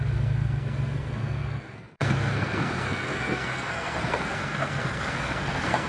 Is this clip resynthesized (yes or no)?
yes